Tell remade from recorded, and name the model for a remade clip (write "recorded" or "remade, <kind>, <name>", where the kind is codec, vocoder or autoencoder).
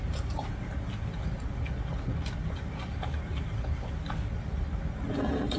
recorded